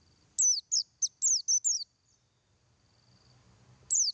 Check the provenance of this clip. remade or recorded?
recorded